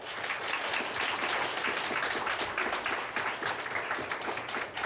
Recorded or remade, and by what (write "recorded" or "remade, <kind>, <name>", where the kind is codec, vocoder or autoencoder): recorded